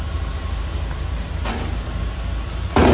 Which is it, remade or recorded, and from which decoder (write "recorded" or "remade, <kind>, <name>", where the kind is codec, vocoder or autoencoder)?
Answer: recorded